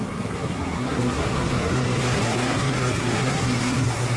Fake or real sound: fake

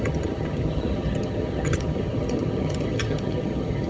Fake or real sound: fake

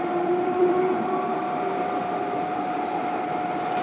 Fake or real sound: fake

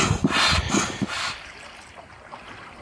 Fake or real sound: real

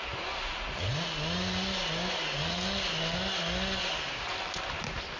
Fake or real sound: real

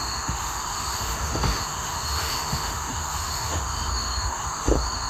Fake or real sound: fake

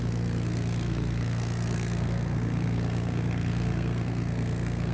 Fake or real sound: fake